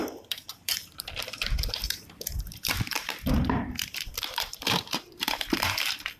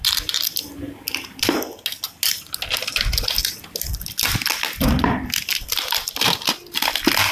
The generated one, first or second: first